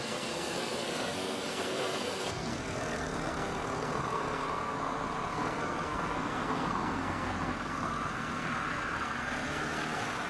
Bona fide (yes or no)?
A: no